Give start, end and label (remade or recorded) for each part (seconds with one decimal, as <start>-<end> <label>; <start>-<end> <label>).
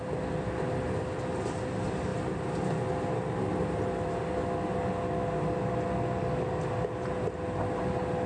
0.0-8.3 recorded